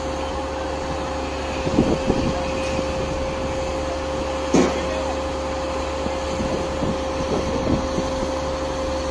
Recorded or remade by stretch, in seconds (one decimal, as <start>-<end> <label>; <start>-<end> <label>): 0.0-9.1 recorded